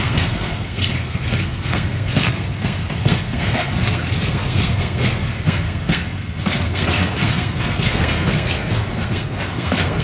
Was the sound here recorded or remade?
remade